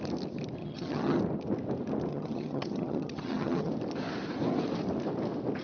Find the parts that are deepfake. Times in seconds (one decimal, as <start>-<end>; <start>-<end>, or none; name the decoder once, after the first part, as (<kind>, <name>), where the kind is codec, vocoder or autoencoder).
0.6-1.2 (vocoder, HiFi-GAN); 2.1-3.7

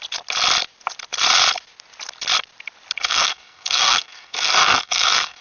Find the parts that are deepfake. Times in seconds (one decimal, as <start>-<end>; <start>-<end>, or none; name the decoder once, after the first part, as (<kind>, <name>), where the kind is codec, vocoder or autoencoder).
3.0-5.4 (codec, SNAC)

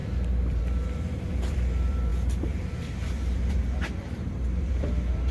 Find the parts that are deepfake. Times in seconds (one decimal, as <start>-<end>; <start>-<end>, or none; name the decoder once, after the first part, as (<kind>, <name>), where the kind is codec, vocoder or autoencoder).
0.0-5.3 (vocoder, BigVGAN v2)

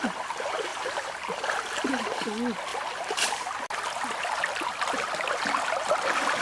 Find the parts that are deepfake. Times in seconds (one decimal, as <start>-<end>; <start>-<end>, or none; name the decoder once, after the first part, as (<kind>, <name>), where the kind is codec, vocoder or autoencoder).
none

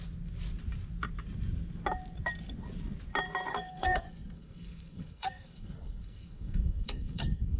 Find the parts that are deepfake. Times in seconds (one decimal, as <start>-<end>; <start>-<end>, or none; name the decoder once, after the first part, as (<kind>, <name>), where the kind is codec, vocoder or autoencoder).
3.5-7.6 (codec, SNAC)